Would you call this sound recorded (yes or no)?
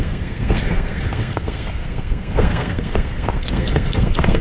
no